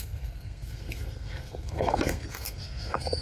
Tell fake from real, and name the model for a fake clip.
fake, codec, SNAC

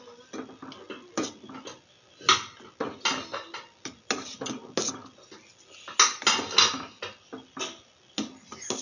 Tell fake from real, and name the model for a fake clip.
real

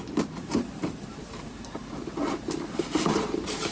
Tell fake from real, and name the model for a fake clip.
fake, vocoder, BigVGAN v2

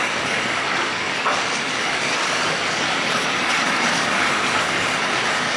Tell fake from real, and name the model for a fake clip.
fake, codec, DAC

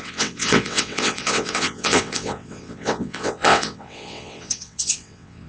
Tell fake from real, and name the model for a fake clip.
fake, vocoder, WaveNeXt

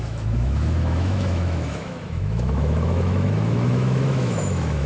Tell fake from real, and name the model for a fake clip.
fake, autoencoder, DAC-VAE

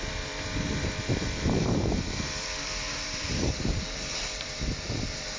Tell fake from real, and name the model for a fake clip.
fake, vocoder, BigVGAN v2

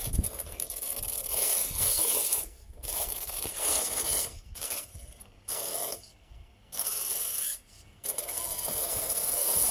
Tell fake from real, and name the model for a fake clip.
fake, codec, SNAC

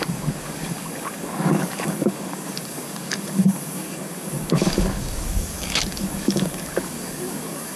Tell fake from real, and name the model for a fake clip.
fake, codec, DAC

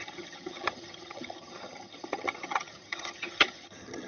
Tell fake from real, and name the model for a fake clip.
fake, vocoder, HiFi-GAN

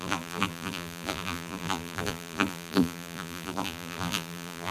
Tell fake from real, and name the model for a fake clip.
fake, vocoder, BigVGAN v2